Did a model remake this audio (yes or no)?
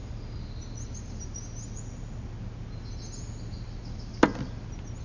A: no